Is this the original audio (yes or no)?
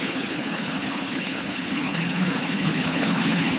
no